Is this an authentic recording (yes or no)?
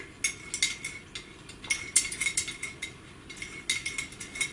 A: yes